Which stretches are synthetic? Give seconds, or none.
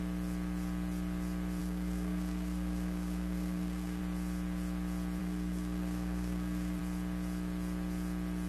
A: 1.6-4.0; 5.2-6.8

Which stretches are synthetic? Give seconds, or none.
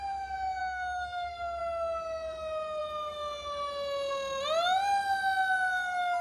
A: 0.6-1.6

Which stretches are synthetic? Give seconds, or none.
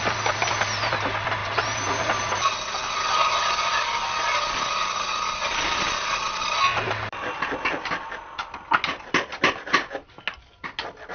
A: none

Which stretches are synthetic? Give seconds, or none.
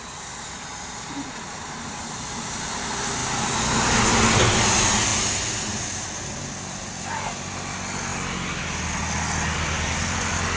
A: none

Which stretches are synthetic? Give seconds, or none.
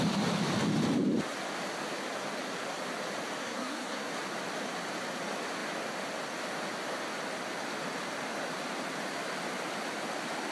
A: 3.4-4.1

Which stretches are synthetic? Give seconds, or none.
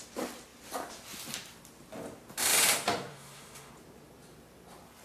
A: 3.1-3.7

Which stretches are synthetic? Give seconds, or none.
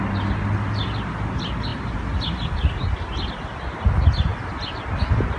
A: none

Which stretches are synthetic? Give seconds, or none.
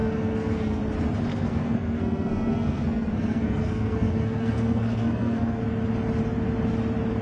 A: 0.0-0.8; 1.3-5.6